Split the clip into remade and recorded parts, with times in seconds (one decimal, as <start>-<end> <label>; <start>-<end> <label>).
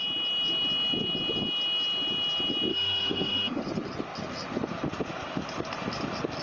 0.0-2.7 recorded; 2.7-3.6 remade; 3.6-6.4 recorded